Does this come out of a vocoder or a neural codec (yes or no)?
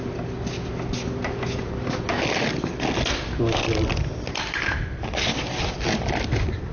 no